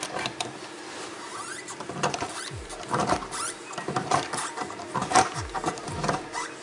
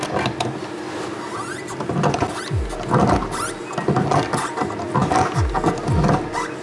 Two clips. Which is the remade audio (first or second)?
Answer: first